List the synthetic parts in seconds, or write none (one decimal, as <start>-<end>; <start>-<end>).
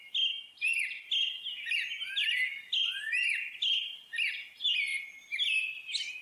2.5-4.1